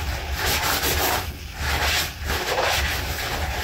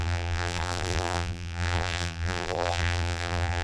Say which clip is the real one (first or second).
first